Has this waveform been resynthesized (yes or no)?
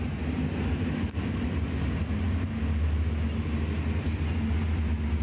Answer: no